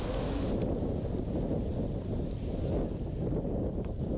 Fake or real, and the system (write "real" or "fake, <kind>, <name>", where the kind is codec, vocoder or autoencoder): real